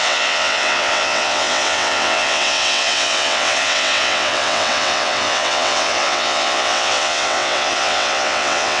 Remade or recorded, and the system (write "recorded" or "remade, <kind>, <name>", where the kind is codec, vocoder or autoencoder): remade, vocoder, WaveNeXt